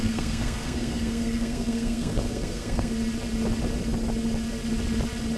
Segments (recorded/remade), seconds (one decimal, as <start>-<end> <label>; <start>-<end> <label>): 0.0-2.9 remade; 2.9-5.4 recorded